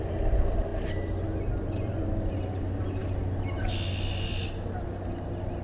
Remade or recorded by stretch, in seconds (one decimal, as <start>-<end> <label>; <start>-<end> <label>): 0.0-0.7 recorded; 0.7-2.3 remade; 2.3-4.4 recorded; 4.4-5.1 remade; 5.1-5.6 recorded